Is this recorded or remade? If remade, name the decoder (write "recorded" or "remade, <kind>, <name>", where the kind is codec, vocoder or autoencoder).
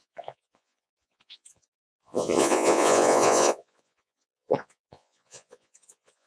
remade, vocoder, Vocos